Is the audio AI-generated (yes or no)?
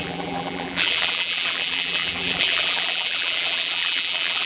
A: yes